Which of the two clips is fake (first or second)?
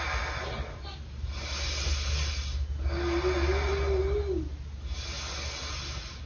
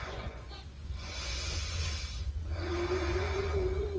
second